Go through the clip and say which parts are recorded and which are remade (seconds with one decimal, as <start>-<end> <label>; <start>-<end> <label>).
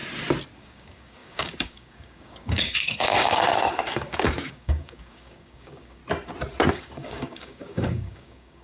0.0-0.6 recorded; 0.6-6.0 remade; 6.0-6.7 recorded; 6.7-8.6 remade